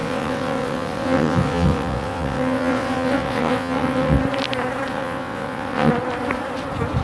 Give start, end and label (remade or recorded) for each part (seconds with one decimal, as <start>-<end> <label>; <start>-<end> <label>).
0.0-4.2 remade; 4.2-4.9 recorded; 4.9-5.9 remade; 5.9-7.0 recorded